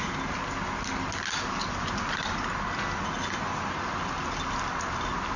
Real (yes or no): yes